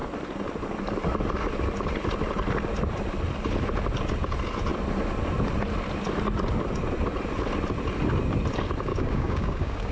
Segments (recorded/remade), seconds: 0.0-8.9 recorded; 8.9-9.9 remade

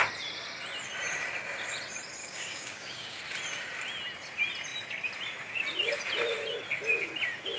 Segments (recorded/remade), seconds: 0.0-2.2 recorded; 2.2-3.2 remade; 3.2-7.6 recorded

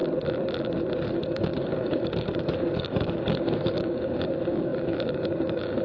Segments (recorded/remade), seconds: 0.0-1.1 recorded; 1.1-5.8 remade